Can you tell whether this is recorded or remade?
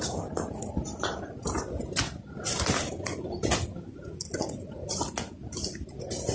recorded